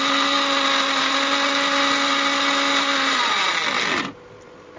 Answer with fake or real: real